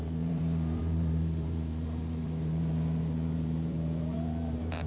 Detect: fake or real fake